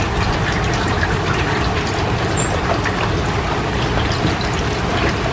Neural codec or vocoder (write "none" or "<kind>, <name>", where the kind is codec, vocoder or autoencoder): none